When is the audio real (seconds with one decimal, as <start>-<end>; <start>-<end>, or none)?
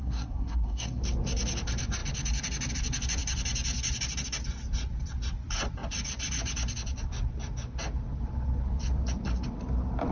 1.0-10.1